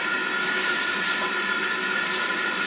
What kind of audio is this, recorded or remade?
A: recorded